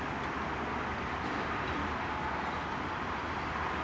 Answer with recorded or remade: recorded